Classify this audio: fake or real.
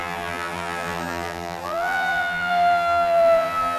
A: fake